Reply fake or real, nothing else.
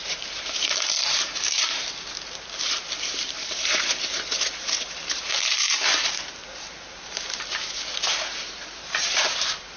fake